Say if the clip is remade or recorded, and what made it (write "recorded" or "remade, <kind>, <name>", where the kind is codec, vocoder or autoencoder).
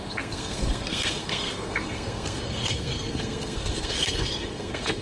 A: remade, codec, SNAC